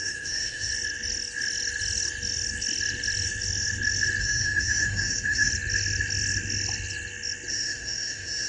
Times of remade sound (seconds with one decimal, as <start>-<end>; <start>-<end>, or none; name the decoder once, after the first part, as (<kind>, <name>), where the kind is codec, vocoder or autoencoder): 0.0-0.7 (autoencoder, DAC-VAE); 4.2-5.5; 7.5-8.5